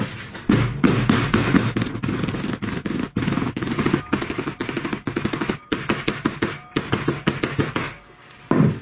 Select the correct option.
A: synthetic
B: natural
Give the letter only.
B